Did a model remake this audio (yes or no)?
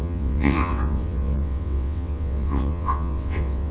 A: yes